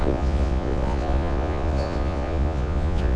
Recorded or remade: remade